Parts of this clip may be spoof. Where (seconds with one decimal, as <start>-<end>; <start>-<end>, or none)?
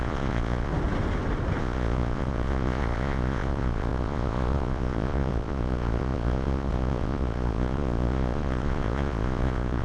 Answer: 0.0-0.7; 1.6-9.8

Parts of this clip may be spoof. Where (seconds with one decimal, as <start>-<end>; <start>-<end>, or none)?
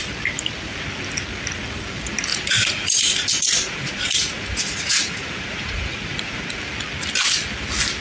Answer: 2.3-6.6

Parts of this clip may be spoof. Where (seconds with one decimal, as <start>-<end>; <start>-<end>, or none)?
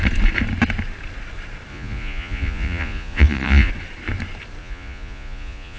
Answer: 1.7-3.7; 4.6-5.8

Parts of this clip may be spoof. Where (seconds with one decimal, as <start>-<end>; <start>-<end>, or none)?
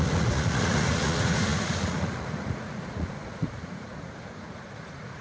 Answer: 0.0-5.2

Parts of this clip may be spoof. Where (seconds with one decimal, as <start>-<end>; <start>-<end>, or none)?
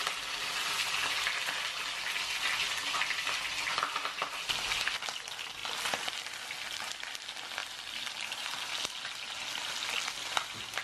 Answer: none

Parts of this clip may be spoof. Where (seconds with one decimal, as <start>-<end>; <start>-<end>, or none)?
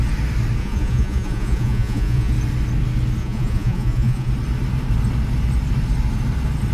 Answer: 0.6-2.3; 3.2-4.3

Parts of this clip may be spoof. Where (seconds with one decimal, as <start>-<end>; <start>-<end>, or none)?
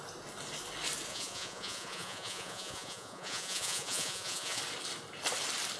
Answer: 1.1-4.6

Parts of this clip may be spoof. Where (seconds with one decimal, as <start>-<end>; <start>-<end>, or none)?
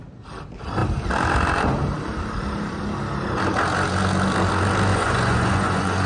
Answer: 4.9-6.1